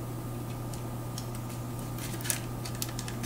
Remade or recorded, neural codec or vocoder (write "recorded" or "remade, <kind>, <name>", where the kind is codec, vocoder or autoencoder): recorded